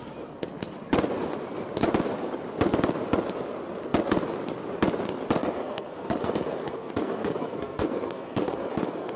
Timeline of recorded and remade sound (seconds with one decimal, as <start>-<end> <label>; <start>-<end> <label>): 0.0-5.4 recorded; 5.4-9.2 remade